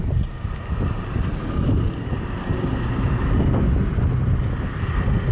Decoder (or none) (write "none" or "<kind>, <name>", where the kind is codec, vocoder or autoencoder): none